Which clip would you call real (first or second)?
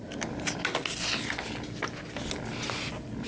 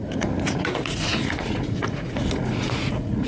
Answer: first